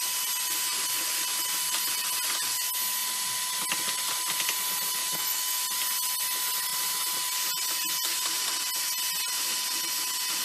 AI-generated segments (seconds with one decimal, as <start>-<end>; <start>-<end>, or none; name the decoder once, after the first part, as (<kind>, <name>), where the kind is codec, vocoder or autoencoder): 5.0-5.6 (autoencoder, DAC-VAE)